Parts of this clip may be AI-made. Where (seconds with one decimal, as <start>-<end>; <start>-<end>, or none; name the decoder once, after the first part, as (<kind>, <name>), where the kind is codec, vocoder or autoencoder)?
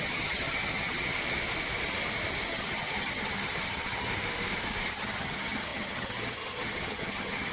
0.0-1.1 (vocoder, HiFi-GAN); 2.5-4.1; 4.9-7.5